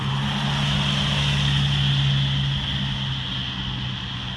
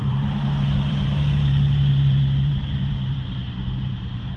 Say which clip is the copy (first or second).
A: second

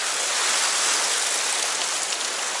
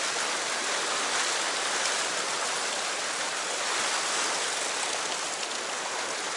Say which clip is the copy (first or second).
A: second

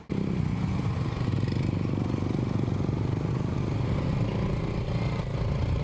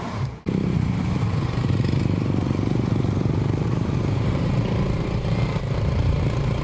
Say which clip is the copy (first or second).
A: second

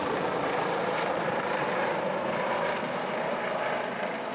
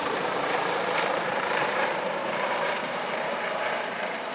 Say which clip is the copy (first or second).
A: second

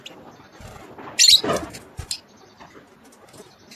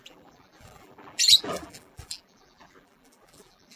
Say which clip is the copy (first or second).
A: second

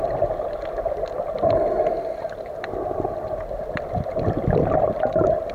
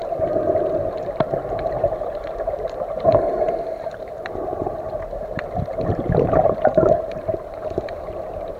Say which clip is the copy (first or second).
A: second